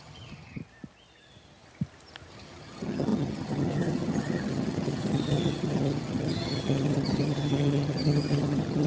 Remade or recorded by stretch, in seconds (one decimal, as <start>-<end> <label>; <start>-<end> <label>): 0.0-0.6 remade; 0.6-2.3 recorded; 2.3-8.9 remade